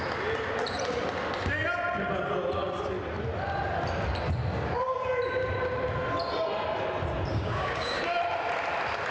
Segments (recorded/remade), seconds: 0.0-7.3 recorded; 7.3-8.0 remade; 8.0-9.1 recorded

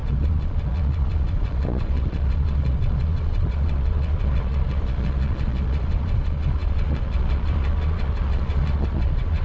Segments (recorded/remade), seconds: 0.0-9.4 remade

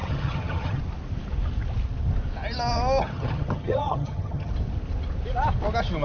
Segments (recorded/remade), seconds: 0.0-0.8 remade; 0.8-3.0 recorded; 3.0-4.5 remade; 4.5-6.0 recorded